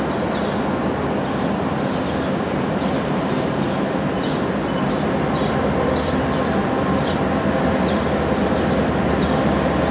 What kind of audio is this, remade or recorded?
recorded